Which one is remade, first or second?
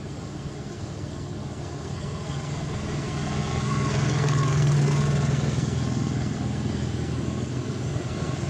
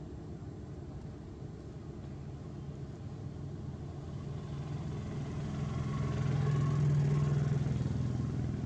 first